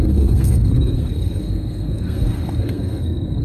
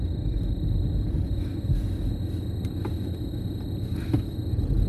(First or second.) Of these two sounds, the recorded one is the second